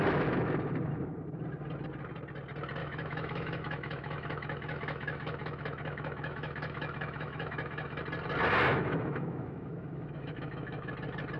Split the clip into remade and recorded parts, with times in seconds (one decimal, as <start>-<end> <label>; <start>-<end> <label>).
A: 0.0-2.8 recorded; 2.8-8.0 remade; 8.0-8.7 recorded; 8.7-10.9 remade; 10.9-11.4 recorded